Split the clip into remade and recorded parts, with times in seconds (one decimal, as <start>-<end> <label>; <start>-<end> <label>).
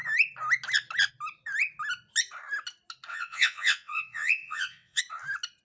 0.0-3.1 recorded; 3.1-5.0 remade; 5.0-5.6 recorded